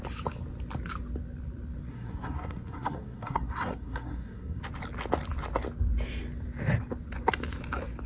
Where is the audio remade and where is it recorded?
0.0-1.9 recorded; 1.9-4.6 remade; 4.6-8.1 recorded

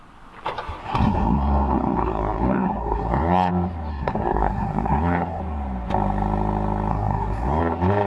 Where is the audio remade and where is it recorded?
0.0-0.8 recorded; 0.8-3.5 remade; 3.5-3.9 recorded; 3.9-5.4 remade; 5.4-6.9 recorded; 6.9-7.6 remade; 7.6-8.1 recorded

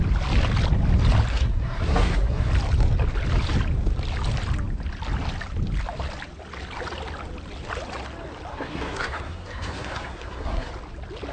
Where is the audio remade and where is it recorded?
0.0-1.3 recorded; 1.3-2.5 remade; 2.5-8.5 recorded; 8.5-10.7 remade; 10.7-11.3 recorded

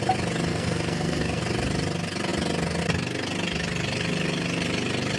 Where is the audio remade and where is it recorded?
0.0-0.5 recorded; 0.5-1.4 remade; 1.4-5.2 recorded

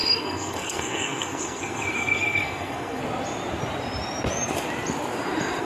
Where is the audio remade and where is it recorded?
0.0-3.0 remade; 3.0-5.6 recorded

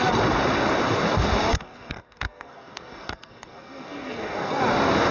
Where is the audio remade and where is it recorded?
0.0-1.5 recorded; 1.5-4.6 remade; 4.6-5.1 recorded